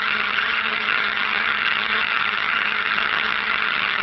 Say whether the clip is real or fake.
fake